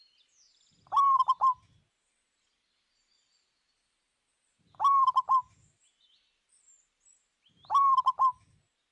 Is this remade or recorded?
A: recorded